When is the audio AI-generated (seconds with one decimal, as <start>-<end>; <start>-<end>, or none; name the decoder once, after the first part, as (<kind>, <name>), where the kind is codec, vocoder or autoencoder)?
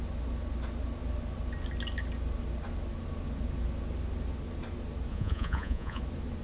5.1-6.0 (vocoder, Vocos)